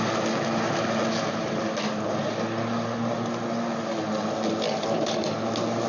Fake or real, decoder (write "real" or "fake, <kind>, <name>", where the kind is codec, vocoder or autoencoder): real